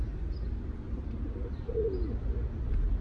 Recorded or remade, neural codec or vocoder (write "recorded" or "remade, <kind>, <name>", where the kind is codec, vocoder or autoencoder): recorded